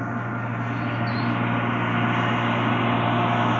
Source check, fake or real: real